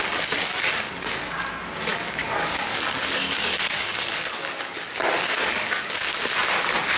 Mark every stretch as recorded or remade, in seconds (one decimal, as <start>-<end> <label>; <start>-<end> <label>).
0.0-0.5 recorded; 0.5-1.1 remade; 1.1-1.9 recorded; 1.9-6.0 remade; 6.0-7.0 recorded